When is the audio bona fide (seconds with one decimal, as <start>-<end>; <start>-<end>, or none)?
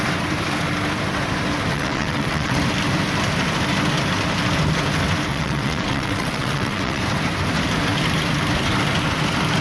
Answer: 0.0-1.7; 2.6-5.3; 7.0-9.6